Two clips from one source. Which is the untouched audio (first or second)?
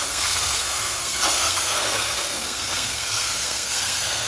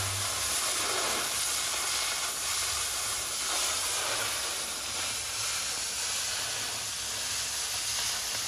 second